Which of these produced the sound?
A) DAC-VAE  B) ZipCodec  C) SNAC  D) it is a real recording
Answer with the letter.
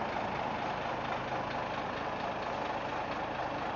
D